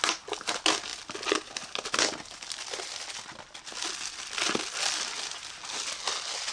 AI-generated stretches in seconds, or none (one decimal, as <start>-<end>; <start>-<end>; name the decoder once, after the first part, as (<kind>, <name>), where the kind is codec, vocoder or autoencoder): none